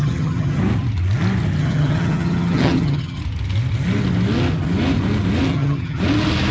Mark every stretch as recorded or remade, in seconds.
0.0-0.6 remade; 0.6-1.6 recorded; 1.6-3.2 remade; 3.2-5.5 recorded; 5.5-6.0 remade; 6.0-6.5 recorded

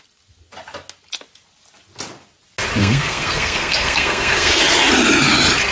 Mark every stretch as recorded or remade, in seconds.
0.0-2.8 recorded; 2.8-4.6 remade; 4.6-5.7 recorded

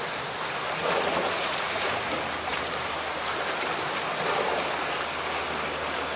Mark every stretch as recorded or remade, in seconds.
0.0-0.8 recorded; 0.8-2.1 remade; 2.1-6.2 recorded

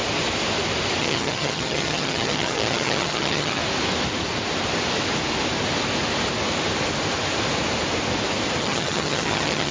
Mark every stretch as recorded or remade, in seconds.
0.0-1.0 recorded; 1.0-3.6 remade; 3.6-8.6 recorded; 8.6-9.7 remade

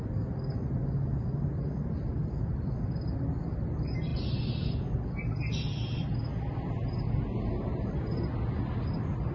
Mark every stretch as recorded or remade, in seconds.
0.0-9.3 recorded

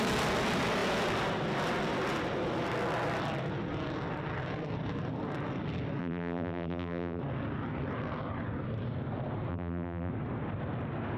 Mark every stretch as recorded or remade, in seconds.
0.0-6.0 recorded; 6.0-7.2 remade; 7.2-9.5 recorded; 9.5-10.1 remade; 10.1-11.2 recorded